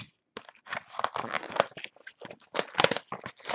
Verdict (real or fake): real